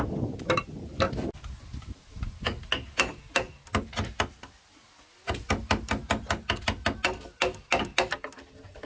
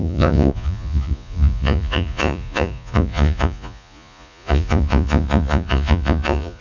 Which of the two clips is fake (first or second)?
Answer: second